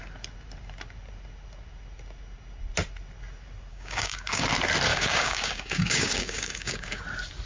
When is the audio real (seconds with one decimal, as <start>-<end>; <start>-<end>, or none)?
0.0-3.7; 4.4-4.9; 7.0-7.5